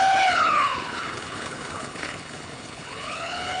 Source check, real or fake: fake